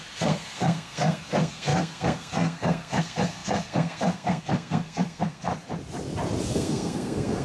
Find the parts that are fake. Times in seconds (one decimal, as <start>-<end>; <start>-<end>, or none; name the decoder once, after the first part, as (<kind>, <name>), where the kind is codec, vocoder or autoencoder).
0.0-5.5 (codec, SNAC); 6.5-7.4